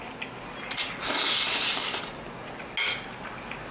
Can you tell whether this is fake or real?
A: real